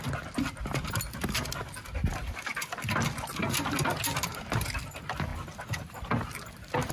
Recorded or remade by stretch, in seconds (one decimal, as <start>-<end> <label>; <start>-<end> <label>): 0.0-2.1 recorded; 2.1-3.3 remade; 3.3-5.3 recorded; 5.3-5.9 remade; 5.9-6.9 recorded